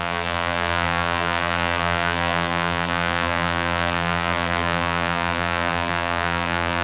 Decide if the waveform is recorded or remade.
remade